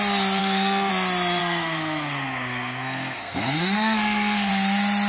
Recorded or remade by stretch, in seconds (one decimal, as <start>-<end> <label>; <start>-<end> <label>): 0.0-0.4 recorded; 0.4-0.9 remade; 0.9-1.4 recorded; 1.4-4.5 remade; 4.5-5.1 recorded

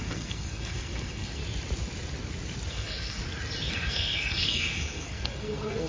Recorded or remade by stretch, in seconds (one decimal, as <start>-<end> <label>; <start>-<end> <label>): 0.0-1.4 remade; 1.4-2.7 recorded; 2.7-3.2 remade; 3.2-3.7 recorded; 3.7-5.9 remade